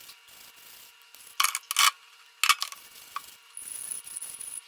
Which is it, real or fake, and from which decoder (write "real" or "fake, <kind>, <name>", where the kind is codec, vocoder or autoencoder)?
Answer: real